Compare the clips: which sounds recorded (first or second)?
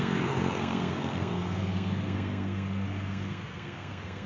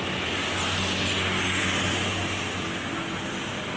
second